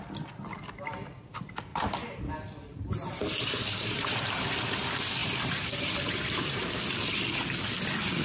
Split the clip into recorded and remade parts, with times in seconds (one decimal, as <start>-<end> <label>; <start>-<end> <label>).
0.0-1.7 recorded; 1.7-2.2 remade; 2.2-3.2 recorded; 3.2-4.5 remade; 4.5-5.2 recorded; 5.2-6.5 remade; 6.5-8.2 recorded